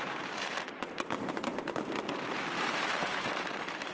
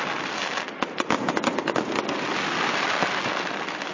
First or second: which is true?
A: second